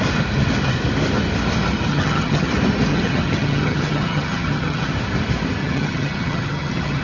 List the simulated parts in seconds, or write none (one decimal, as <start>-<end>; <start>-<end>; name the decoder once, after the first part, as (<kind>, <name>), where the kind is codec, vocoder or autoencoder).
1.9-2.5 (vocoder, HiFi-GAN); 2.9-4.9; 5.6-7.0